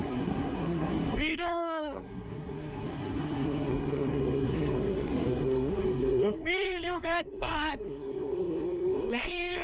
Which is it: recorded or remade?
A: remade